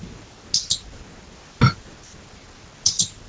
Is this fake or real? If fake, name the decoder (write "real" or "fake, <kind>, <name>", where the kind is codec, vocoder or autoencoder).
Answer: real